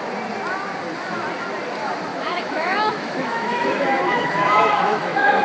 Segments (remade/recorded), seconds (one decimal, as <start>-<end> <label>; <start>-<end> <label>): 0.0-2.1 recorded; 2.1-5.4 remade

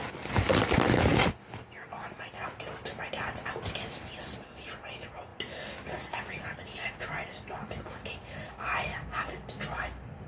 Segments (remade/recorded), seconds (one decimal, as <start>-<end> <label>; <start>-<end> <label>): 0.0-10.3 recorded